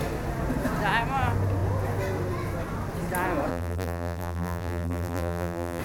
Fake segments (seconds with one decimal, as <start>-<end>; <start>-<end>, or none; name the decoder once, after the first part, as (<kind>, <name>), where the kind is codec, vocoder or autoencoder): 3.5-5.8 (vocoder, BigVGAN v2)